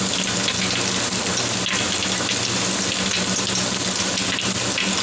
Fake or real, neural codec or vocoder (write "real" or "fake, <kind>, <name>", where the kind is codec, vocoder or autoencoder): real